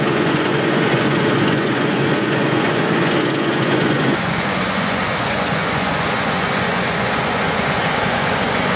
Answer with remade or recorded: remade